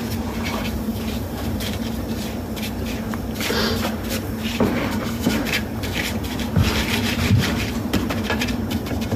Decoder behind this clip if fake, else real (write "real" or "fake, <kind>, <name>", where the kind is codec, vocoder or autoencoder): fake, vocoder, BigVGAN v2